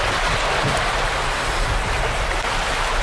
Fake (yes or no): no